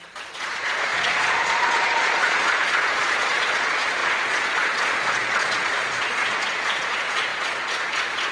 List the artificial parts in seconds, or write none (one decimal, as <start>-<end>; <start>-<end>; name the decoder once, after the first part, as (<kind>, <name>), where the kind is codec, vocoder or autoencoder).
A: 0.0-8.3 (vocoder, Vocos)